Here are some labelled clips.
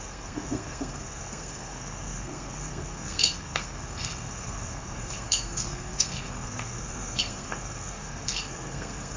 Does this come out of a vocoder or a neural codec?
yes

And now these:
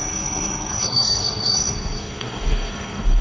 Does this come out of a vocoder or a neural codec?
yes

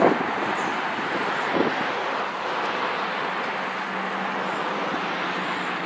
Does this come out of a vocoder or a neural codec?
no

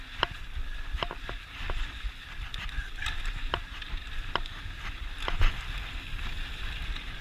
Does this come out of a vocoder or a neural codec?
no